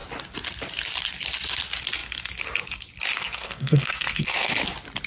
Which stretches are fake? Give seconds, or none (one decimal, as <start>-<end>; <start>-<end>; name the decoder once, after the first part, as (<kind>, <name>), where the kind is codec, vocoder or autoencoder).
3.2-4.5 (codec, SNAC)